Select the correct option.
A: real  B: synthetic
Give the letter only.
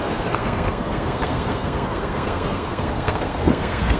B